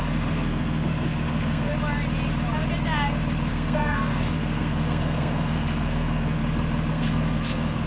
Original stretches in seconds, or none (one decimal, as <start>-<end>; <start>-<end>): 1.7-3.5; 6.4-6.9